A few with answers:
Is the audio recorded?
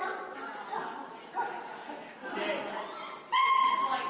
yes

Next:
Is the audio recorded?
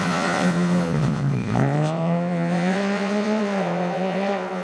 no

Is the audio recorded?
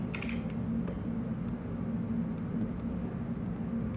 yes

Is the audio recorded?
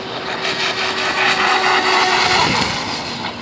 yes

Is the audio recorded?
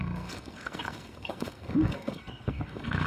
no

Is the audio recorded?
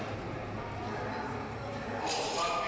yes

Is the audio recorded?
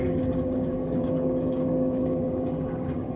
no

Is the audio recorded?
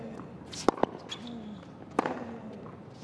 yes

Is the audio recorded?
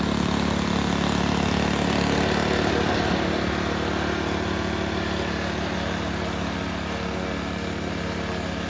yes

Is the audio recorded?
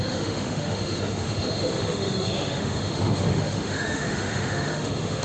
no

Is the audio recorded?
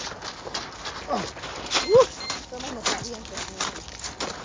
yes